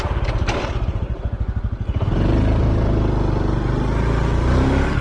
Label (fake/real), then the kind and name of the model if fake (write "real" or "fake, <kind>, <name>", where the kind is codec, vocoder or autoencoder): real